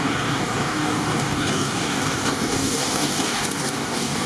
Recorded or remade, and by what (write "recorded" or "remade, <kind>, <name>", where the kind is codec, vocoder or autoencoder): remade, codec, DAC